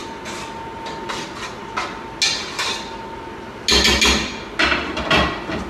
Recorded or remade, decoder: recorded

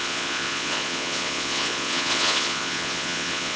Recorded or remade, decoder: remade, vocoder, Vocos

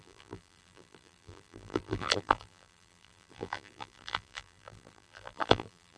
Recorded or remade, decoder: remade, vocoder, BigVGAN v2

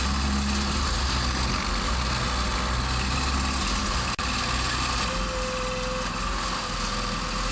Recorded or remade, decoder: recorded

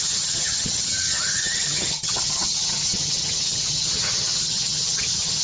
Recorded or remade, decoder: remade, vocoder, HiFi-GAN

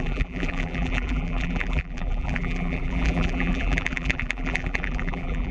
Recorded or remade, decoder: remade, vocoder, BigVGAN v2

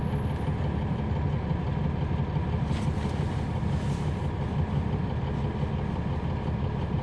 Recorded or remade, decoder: recorded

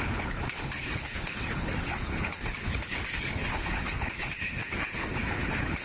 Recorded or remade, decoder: remade, codec, HILCodec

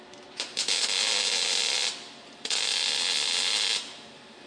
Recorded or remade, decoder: recorded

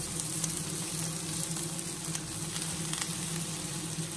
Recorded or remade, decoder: recorded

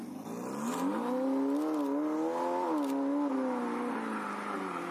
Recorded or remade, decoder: recorded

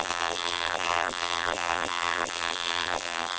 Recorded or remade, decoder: remade, vocoder, BigVGAN v2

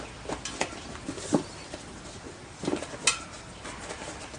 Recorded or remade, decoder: recorded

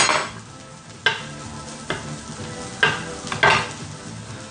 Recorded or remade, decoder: recorded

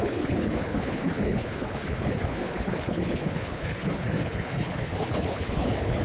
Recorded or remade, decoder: remade, codec, HILCodec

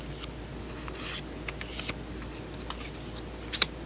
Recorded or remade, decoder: recorded